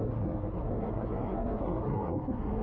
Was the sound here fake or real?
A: fake